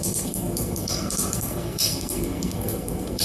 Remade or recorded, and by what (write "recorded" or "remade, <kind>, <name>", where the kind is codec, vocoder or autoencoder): remade, codec, SNAC